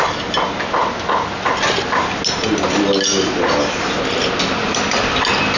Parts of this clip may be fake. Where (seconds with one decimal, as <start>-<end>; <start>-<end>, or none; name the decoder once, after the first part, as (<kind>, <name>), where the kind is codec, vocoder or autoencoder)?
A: none

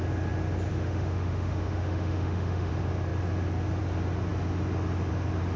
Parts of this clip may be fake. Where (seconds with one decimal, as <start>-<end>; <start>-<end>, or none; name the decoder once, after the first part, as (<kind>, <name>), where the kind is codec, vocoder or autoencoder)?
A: 0.7-2.7 (autoencoder, DAC-VAE)

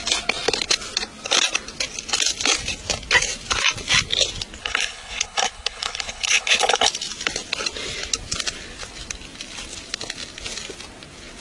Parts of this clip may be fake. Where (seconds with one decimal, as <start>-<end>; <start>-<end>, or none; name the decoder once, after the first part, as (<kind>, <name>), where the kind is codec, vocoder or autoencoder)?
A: 4.6-6.9 (codec, HILCodec)

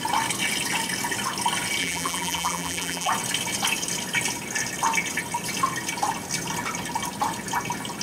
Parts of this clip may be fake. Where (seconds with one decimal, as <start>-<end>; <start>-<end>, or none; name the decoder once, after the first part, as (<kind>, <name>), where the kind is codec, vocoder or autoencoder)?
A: 1.8-3.1 (vocoder, BigVGAN v2)